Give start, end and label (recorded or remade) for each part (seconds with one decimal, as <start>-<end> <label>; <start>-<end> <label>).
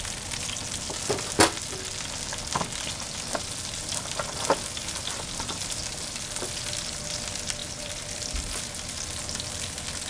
0.0-7.6 recorded; 7.6-8.6 remade; 8.6-10.1 recorded